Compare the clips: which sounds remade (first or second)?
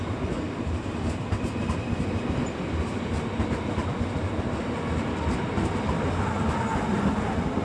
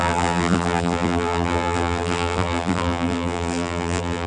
second